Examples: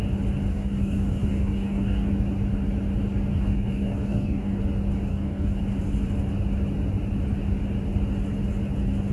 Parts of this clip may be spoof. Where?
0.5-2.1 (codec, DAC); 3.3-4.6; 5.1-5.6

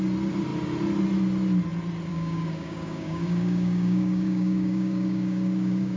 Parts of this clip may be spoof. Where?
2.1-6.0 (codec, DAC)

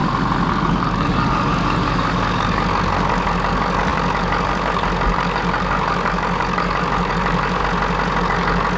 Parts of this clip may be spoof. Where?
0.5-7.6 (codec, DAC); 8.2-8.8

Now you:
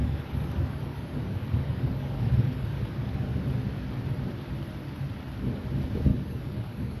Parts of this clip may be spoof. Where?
0.0-3.4 (codec, DAC); 6.1-7.0